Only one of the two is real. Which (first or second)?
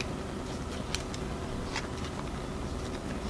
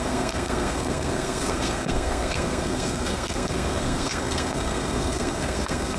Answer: first